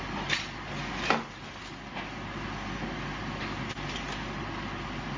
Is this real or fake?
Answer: real